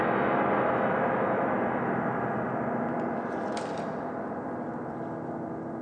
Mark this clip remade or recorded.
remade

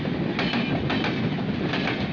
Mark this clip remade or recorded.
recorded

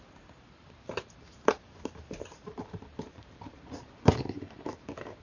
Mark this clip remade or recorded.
remade